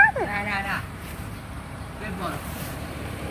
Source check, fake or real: fake